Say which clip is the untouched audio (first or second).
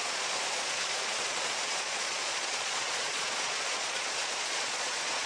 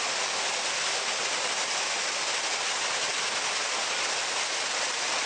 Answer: second